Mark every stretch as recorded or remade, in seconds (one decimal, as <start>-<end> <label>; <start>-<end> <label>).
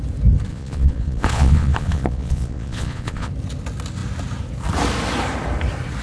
0.0-0.5 recorded; 0.5-3.3 remade; 3.3-6.0 recorded